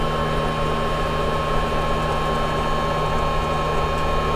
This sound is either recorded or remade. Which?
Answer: recorded